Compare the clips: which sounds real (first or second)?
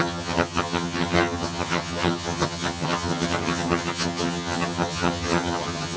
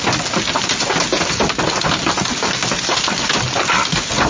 second